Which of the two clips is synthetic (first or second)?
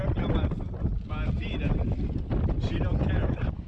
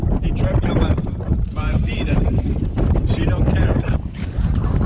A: second